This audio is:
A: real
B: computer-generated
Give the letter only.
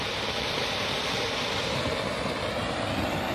A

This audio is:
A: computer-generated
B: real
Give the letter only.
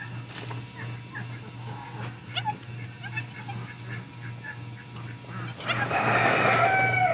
B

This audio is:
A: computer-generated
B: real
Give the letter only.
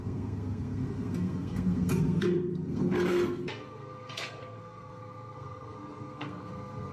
A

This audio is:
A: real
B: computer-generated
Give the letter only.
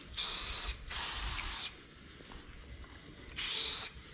A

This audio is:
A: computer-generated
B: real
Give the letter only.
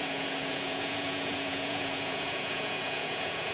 A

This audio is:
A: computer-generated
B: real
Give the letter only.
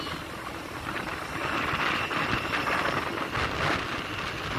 B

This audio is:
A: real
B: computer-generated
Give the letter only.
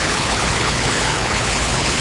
B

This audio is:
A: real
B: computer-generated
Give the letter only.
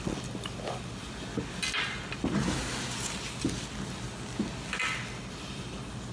A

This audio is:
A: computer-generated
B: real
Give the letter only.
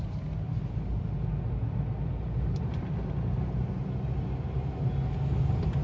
B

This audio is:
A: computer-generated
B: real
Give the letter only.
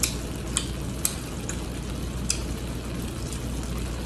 B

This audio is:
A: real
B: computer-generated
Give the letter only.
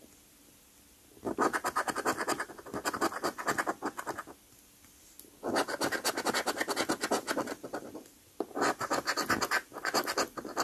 A